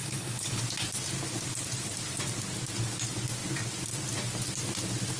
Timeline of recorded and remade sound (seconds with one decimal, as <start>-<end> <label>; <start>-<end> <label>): 0.0-0.6 remade; 0.6-5.2 recorded